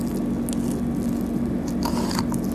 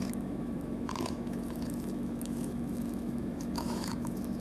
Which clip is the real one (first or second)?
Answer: first